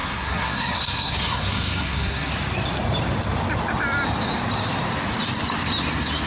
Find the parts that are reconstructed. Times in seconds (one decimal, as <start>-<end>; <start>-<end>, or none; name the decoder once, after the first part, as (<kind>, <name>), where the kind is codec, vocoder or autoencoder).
0.0-2.3 (codec, SNAC)